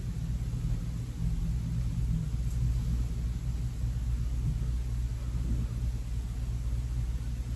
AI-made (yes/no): no